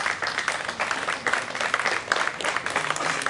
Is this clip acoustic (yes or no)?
yes